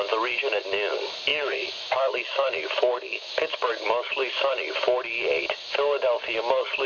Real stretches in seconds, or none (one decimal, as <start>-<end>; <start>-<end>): 0.0-1.3; 3.7-6.9